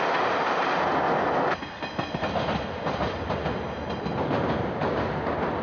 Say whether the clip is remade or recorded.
recorded